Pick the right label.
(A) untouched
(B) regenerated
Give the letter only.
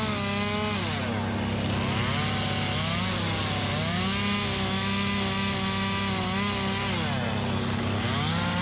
A